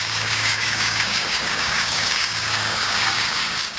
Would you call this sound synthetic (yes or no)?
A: yes